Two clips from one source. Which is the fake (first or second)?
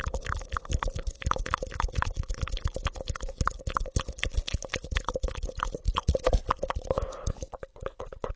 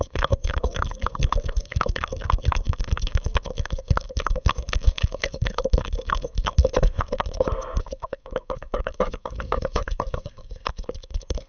second